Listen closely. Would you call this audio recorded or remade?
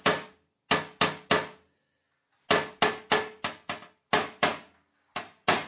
recorded